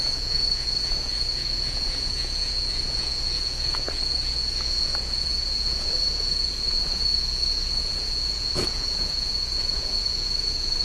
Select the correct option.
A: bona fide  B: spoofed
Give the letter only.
B